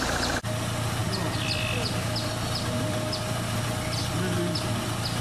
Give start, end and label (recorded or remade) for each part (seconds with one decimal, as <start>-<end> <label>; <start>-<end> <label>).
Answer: 0.0-1.0 recorded; 1.0-4.1 remade; 4.1-5.2 recorded

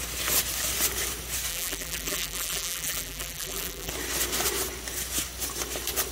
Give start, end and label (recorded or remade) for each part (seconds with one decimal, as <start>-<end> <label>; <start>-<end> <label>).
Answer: 0.0-1.5 recorded; 1.5-3.9 remade; 3.9-6.1 recorded

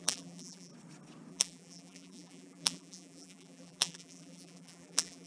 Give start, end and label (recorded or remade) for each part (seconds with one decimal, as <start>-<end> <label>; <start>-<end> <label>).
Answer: 0.0-0.7 remade; 0.7-1.3 recorded; 1.3-5.3 remade

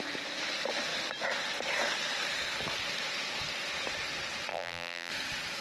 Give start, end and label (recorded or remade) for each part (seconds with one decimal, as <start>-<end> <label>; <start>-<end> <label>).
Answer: 0.0-4.5 recorded; 4.5-5.1 remade; 5.1-5.6 recorded

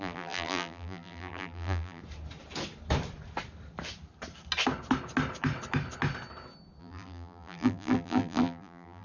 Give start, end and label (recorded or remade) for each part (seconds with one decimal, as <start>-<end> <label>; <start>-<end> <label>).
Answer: 0.0-2.0 remade; 2.0-6.8 recorded; 6.8-9.0 remade

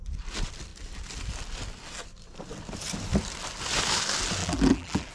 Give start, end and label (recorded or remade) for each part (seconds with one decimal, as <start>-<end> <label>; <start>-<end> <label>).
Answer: 0.0-4.4 recorded; 4.4-5.1 remade

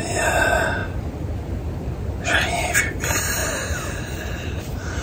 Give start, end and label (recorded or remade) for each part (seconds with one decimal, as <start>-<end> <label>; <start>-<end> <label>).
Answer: 0.0-0.8 remade; 0.8-2.8 recorded; 2.8-5.0 remade

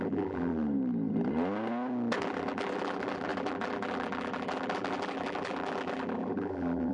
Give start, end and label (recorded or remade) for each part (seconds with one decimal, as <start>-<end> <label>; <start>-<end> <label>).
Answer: 0.0-0.5 remade; 0.5-2.2 recorded; 2.2-6.9 remade